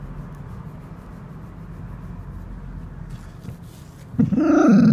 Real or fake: real